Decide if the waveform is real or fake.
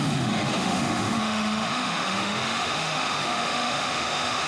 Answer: fake